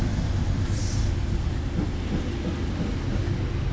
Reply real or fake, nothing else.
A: real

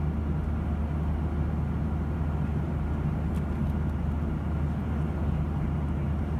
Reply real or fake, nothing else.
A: real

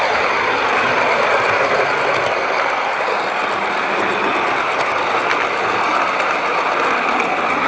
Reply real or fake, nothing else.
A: real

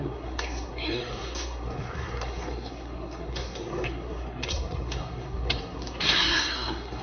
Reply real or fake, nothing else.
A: fake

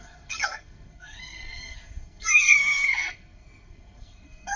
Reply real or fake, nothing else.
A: fake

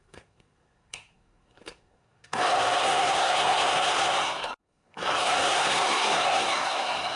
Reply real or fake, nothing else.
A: fake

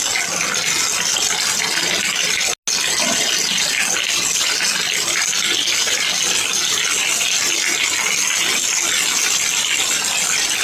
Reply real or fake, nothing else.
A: real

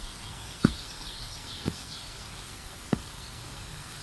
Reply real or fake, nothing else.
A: fake